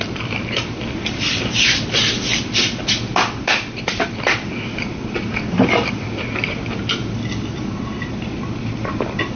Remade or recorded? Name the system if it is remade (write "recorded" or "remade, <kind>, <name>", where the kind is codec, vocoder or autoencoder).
remade, vocoder, BigVGAN v2